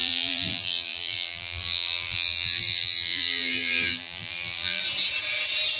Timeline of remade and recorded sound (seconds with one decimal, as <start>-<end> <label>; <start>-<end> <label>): 0.0-4.8 remade; 4.8-5.8 recorded